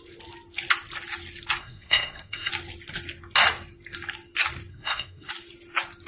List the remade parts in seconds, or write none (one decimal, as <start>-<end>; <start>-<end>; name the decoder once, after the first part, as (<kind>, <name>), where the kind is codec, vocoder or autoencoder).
1.6-2.5 (codec, SNAC); 4.7-5.3